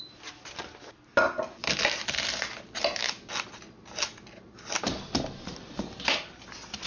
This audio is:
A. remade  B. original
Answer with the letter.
B